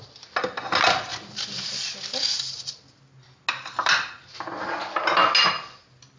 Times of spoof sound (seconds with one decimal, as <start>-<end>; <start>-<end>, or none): none